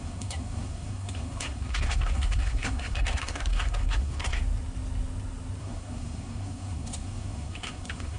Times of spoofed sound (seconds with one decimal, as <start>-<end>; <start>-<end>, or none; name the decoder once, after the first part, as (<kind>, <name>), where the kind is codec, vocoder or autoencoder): 0.0-4.4 (codec, SNAC); 5.6-8.2